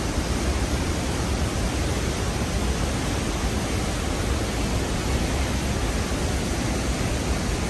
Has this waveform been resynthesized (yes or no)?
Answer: no